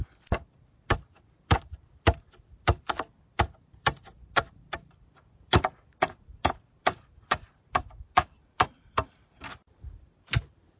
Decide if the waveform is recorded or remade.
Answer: remade